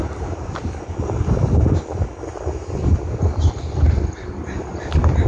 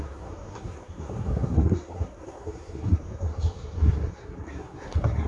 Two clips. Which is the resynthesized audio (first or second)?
second